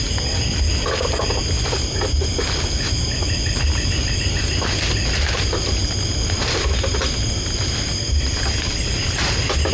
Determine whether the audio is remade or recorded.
recorded